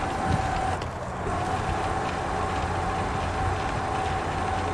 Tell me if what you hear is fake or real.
real